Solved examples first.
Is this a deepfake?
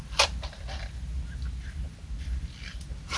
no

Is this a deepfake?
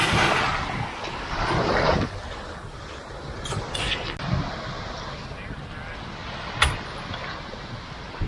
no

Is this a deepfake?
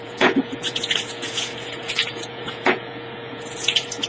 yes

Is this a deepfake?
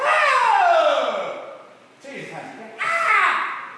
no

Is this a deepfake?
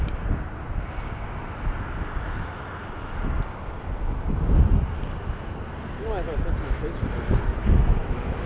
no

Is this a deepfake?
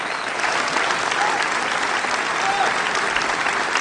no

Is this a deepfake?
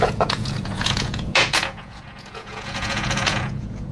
yes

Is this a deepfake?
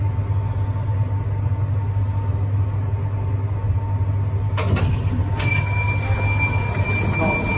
no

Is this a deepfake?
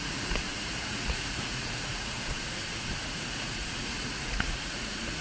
yes